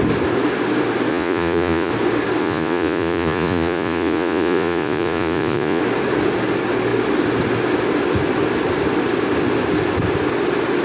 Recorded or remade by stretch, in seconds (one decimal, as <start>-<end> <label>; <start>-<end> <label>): 0.0-1.1 recorded; 1.1-1.9 remade; 1.9-2.4 recorded; 2.4-5.8 remade; 5.8-10.8 recorded